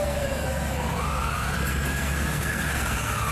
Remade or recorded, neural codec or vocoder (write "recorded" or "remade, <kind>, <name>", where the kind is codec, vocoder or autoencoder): remade, codec, SNAC